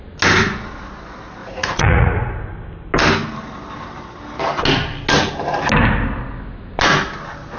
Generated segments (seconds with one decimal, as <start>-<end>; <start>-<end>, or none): 1.4-2.3